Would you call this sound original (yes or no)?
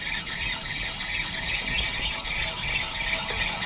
yes